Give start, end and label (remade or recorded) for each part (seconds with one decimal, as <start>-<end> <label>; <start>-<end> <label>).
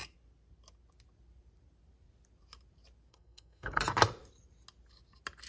0.0-3.1 recorded; 3.1-3.8 remade; 3.8-5.5 recorded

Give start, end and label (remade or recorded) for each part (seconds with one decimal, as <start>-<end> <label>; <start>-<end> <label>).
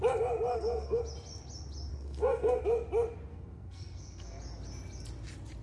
0.0-0.5 recorded; 0.5-1.0 remade; 1.0-1.9 recorded; 1.9-2.6 remade; 2.6-3.3 recorded; 3.3-4.4 remade; 4.4-5.6 recorded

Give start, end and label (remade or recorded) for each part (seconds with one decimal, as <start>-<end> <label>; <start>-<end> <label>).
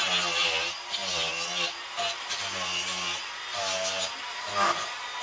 0.0-5.2 recorded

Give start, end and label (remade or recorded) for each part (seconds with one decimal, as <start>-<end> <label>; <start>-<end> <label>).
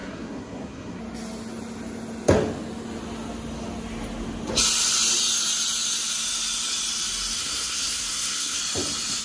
0.0-1.0 remade; 1.0-7.4 recorded; 7.4-8.6 remade; 8.6-9.2 recorded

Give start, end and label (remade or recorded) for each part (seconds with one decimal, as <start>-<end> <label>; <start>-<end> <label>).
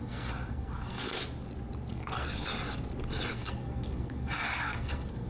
0.0-1.2 remade; 1.2-1.9 recorded; 1.9-2.5 remade; 2.5-3.3 recorded; 3.3-5.3 remade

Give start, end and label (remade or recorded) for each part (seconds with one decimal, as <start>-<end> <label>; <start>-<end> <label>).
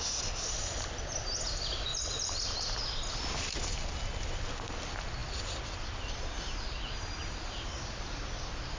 0.0-8.8 recorded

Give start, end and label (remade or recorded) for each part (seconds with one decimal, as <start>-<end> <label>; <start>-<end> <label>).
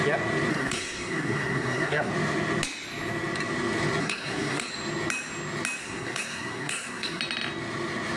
0.0-0.5 recorded; 0.5-2.1 remade; 2.1-4.0 recorded; 4.0-4.7 remade; 4.7-5.8 recorded; 5.8-7.2 remade; 7.2-8.2 recorded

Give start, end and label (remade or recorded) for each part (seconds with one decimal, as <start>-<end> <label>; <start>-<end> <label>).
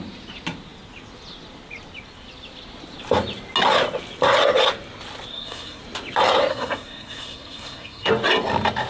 0.0-5.3 recorded; 5.3-5.8 remade; 5.8-6.5 recorded; 6.5-8.1 remade; 8.1-8.9 recorded